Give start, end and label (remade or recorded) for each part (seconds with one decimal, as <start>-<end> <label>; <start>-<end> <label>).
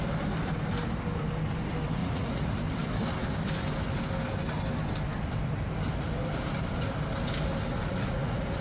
0.0-2.0 recorded; 2.0-2.6 remade; 2.6-7.7 recorded; 7.7-8.6 remade